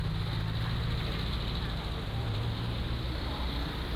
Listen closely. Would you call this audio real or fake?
real